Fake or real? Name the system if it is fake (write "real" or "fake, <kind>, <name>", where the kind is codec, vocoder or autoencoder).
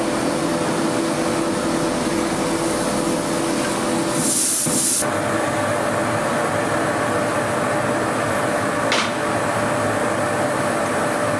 real